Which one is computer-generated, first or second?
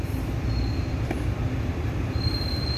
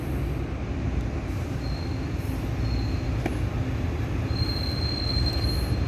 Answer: first